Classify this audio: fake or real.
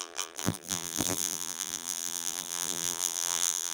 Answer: fake